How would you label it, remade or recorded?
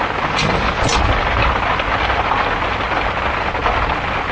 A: recorded